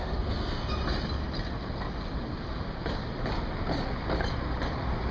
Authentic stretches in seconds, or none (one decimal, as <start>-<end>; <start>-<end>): 0.7-5.1